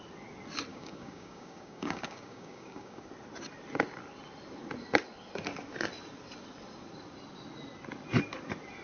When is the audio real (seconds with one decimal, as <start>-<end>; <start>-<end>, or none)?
0.0-0.7; 3.1-8.8